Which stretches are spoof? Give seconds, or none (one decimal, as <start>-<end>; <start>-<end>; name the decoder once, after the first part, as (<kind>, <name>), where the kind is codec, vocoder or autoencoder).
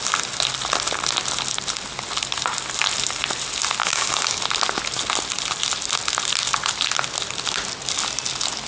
3.8-4.4 (codec, DAC)